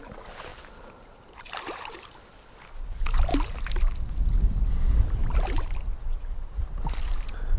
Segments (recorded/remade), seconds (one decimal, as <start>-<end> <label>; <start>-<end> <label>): 0.0-0.5 recorded; 0.5-2.2 remade; 2.2-7.6 recorded